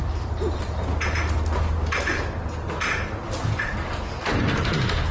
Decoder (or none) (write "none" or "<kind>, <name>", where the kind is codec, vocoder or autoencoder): none